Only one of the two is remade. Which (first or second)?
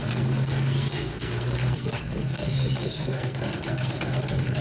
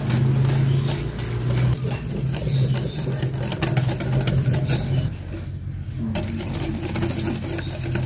first